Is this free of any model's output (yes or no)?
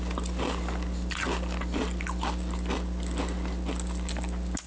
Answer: yes